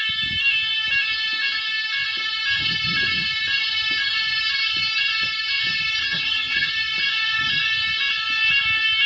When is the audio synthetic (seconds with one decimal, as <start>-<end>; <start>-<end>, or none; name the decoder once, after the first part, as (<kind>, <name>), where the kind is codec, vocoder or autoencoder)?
6.0-6.7 (vocoder, HiFi-GAN)